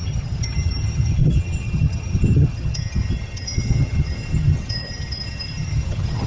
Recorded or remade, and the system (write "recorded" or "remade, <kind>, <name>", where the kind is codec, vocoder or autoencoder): remade, vocoder, HiFi-GAN